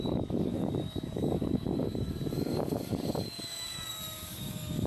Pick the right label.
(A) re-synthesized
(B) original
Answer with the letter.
A